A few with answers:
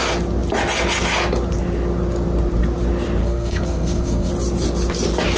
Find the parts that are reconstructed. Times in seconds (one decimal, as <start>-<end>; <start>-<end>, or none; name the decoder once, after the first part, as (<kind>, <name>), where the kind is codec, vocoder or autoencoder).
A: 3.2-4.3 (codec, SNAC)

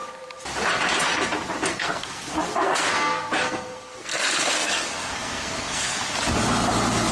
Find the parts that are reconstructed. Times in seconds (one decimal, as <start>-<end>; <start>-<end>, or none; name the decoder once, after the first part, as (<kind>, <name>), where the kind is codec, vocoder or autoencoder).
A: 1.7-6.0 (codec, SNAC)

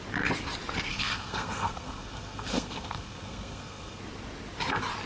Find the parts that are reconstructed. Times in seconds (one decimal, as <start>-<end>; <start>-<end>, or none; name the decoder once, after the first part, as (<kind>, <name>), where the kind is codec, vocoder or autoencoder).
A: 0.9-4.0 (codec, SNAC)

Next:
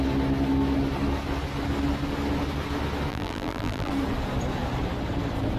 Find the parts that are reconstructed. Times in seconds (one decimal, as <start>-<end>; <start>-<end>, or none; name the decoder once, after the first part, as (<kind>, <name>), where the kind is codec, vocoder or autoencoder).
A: 3.1-3.9 (vocoder, BigVGAN v2)

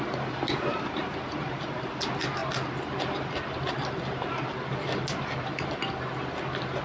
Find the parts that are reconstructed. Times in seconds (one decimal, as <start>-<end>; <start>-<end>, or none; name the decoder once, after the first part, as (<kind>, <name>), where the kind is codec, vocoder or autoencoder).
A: none

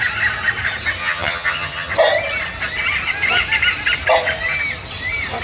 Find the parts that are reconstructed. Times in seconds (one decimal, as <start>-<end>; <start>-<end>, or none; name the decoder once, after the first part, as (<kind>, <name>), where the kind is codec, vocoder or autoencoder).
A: 1.0-1.9 (vocoder, HiFi-GAN)

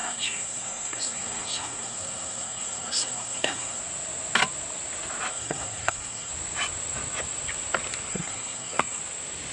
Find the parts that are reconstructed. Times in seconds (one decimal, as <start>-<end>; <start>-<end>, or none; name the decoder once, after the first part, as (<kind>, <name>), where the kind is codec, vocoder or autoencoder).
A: 0.0-3.8 (codec, SNAC); 5.3-6.3; 8.1-9.0

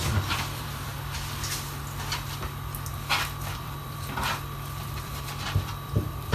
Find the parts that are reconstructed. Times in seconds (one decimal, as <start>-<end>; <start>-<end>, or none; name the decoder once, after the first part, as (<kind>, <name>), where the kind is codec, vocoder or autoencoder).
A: 0.0-0.9 (vocoder, BigVGAN v2); 3.5-6.3